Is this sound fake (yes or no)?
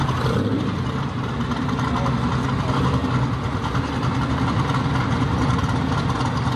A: no